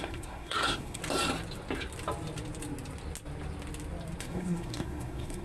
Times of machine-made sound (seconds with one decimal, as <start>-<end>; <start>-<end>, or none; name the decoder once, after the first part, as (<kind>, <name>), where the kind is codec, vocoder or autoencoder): 0.0-1.0 (codec, SNAC); 4.2-5.4